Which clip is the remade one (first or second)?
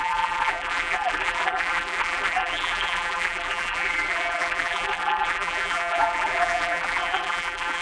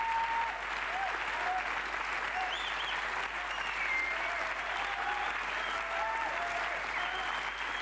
first